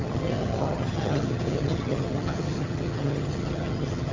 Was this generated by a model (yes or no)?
yes